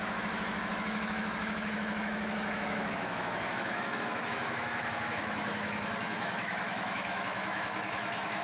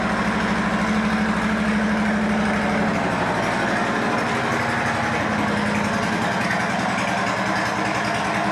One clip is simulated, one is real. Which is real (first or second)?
second